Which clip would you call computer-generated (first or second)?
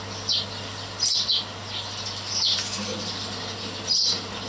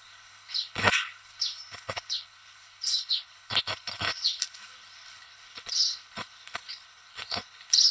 second